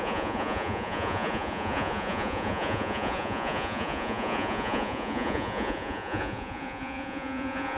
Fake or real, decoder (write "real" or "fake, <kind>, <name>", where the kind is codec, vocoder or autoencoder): fake, vocoder, Vocos